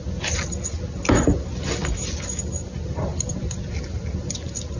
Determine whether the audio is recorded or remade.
recorded